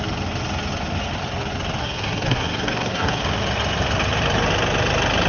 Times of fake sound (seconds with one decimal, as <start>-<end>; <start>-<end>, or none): 1.8-3.2